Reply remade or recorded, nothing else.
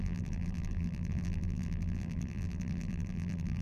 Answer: remade